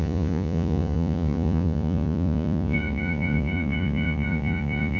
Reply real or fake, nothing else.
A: fake